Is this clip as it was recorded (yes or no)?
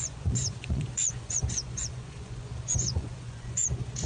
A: no